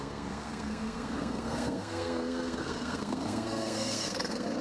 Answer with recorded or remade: remade